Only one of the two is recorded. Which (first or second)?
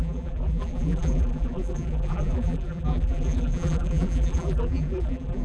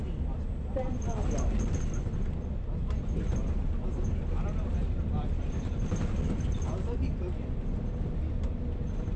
second